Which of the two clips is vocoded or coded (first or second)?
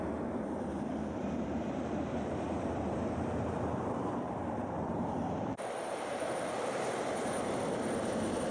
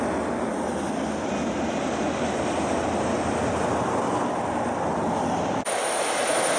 first